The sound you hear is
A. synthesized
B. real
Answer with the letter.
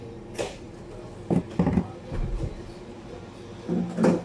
B